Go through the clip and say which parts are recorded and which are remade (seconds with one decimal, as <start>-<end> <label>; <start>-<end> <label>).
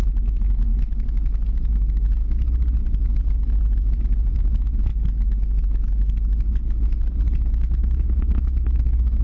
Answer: 0.0-0.7 remade; 0.7-4.3 recorded; 4.3-4.9 remade; 4.9-7.6 recorded; 7.6-9.2 remade